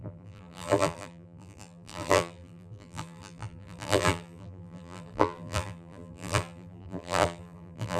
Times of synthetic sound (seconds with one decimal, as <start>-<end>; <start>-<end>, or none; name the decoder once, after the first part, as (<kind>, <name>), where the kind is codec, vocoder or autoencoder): 0.0-8.0 (vocoder, BigVGAN v2)